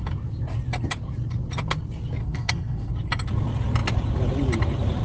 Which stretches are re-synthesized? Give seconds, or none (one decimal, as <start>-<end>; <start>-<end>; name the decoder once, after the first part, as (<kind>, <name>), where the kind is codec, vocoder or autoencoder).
2.2-2.9 (codec, SNAC)